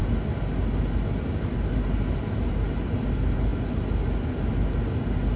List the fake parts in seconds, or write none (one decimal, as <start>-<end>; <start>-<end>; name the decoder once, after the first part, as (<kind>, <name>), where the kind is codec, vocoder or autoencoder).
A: none